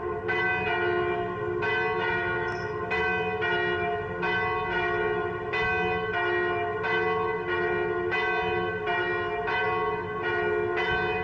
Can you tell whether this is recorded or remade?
recorded